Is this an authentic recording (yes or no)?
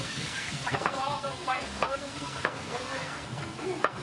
no